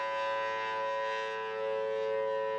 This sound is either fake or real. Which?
real